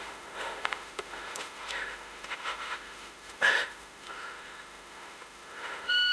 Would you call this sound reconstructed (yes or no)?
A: yes